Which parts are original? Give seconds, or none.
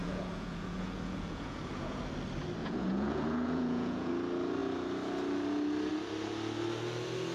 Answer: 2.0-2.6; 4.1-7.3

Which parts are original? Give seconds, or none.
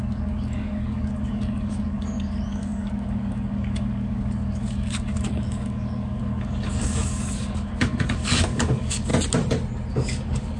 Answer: 9.1-9.9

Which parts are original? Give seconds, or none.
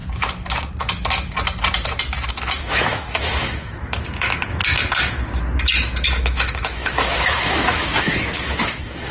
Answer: 0.0-2.3; 4.6-6.2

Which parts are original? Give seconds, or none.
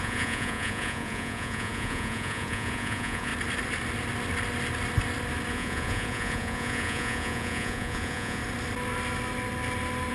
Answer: 3.3-5.5; 8.4-10.1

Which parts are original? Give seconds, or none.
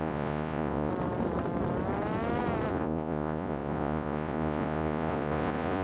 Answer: 0.9-2.7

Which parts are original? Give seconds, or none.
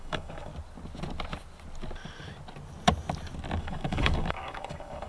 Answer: 0.5-3.6